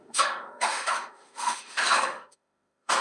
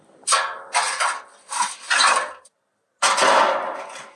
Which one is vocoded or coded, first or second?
first